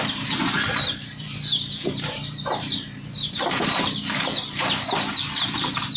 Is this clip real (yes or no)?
no